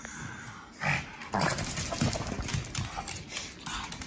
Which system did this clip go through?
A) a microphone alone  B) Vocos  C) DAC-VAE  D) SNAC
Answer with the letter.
A